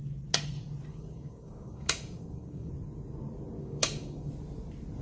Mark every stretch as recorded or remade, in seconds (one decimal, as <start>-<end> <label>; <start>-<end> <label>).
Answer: 0.0-0.9 recorded; 0.9-2.7 remade; 2.7-3.6 recorded; 3.6-4.3 remade; 4.3-5.0 recorded